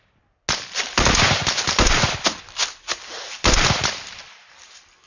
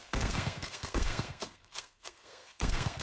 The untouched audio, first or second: first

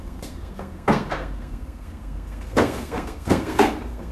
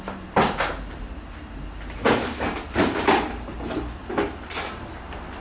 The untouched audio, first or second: second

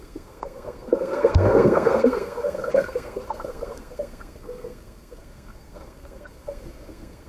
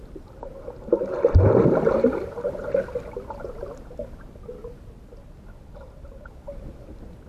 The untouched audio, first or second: second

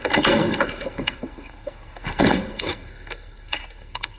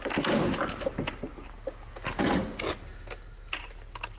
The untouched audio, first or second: second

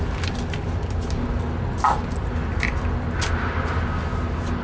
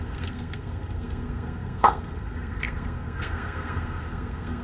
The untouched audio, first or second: first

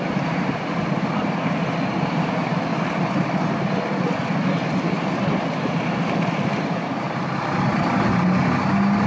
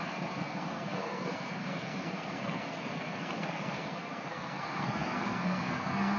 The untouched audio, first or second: first